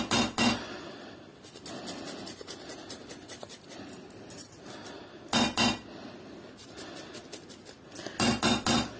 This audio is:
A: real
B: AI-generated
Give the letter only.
A